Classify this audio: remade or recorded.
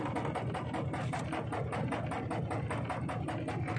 recorded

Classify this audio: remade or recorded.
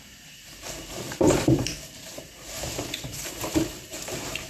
remade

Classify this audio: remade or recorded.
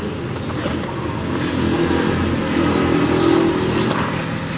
recorded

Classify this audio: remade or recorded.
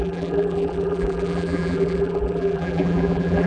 remade